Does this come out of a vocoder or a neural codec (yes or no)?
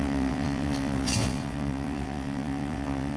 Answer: yes